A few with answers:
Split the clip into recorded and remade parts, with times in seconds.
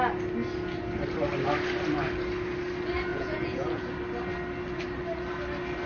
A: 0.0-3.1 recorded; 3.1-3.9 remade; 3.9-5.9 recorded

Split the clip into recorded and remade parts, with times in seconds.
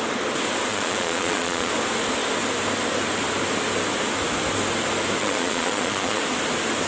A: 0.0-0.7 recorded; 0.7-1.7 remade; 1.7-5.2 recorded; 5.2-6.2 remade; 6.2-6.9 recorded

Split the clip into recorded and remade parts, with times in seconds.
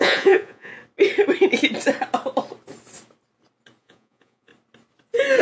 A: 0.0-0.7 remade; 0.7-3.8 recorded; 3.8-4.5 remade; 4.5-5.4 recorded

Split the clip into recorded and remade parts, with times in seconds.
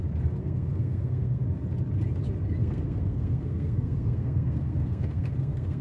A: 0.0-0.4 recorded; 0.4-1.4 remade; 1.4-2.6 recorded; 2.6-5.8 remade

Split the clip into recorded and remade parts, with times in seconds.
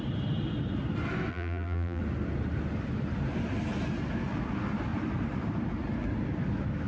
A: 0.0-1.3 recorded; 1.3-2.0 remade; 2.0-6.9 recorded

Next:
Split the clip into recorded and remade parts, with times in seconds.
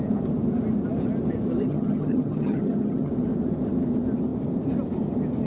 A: 0.0-1.7 recorded; 1.7-3.1 remade; 3.1-5.5 recorded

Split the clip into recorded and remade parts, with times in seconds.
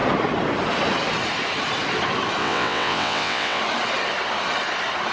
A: 0.0-2.4 recorded; 2.4-3.6 remade; 3.6-5.1 recorded